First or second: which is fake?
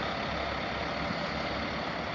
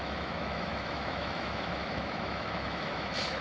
second